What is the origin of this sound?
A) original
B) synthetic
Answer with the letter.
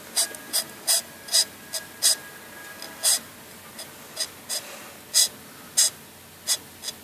A